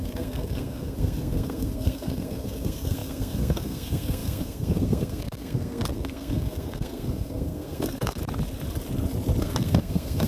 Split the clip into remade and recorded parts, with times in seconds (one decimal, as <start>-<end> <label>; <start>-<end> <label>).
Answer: 0.0-8.2 remade; 8.2-9.4 recorded; 9.4-10.3 remade